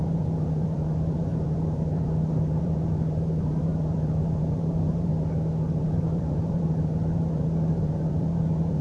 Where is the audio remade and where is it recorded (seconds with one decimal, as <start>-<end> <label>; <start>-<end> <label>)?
0.0-5.1 remade; 5.1-5.8 recorded; 5.8-8.8 remade